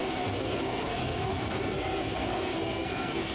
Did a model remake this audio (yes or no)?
yes